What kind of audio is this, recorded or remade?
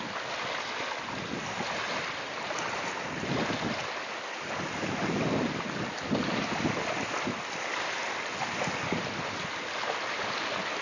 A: recorded